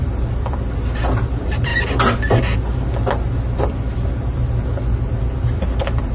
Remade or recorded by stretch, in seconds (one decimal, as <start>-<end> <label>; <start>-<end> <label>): 0.0-1.7 remade; 1.7-5.2 recorded; 5.2-6.1 remade